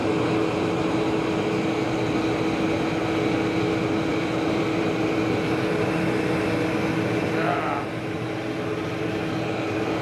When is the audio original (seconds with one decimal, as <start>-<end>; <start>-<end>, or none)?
1.4-4.1; 6.5-10.0